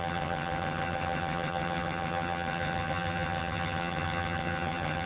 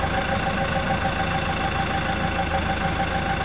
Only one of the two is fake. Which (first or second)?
first